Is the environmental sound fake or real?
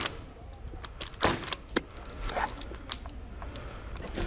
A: real